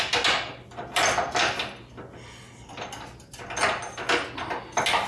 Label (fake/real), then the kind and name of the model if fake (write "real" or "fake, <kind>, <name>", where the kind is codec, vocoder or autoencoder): real